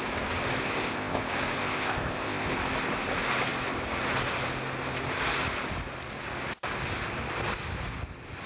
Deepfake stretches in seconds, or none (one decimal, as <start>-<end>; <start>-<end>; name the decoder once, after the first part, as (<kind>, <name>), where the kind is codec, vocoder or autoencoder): 0.6-1.2 (codec, ZipCodec); 1.6-2.5